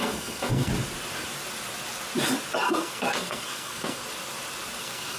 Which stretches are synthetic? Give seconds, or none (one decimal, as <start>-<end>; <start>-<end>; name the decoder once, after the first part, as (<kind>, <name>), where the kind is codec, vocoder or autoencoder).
0.0-0.7 (codec, SNAC); 2.6-4.0; 4.8-5.2